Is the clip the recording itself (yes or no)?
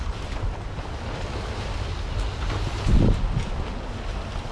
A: yes